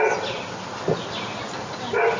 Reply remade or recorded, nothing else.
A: recorded